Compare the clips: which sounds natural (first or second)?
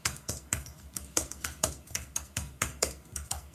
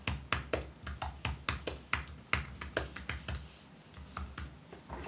second